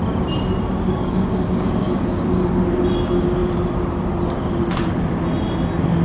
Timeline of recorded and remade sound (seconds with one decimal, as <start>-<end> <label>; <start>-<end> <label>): 0.0-0.8 recorded; 0.8-2.6 remade; 2.6-6.0 recorded